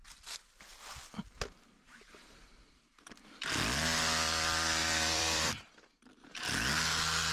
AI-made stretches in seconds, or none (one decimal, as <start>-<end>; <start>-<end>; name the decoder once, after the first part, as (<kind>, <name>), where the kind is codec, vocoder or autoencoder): 4.8-5.5 (vocoder, BigVGAN v2)